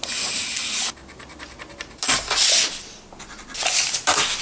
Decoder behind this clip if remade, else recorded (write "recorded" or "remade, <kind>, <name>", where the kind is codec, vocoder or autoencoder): recorded